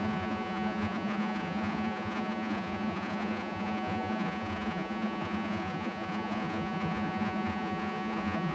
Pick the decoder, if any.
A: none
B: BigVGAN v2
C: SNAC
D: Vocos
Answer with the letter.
D